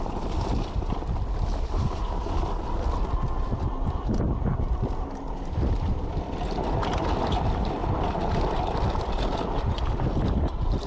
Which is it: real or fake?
real